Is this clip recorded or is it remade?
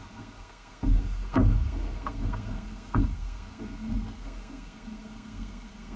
remade